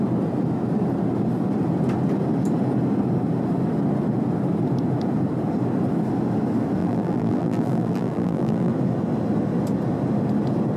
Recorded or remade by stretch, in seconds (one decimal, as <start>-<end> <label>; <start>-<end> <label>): 0.0-6.8 recorded; 6.8-8.7 remade; 8.7-10.8 recorded